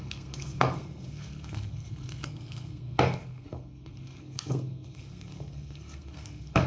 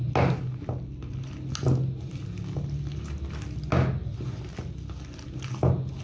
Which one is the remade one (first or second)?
first